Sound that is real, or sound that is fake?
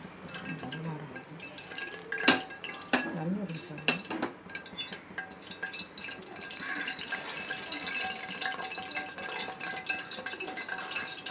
real